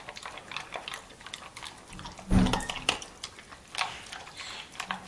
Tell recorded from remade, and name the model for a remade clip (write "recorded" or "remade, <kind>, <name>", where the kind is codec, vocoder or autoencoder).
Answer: recorded